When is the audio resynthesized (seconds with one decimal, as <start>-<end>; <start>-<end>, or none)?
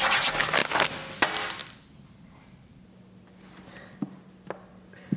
none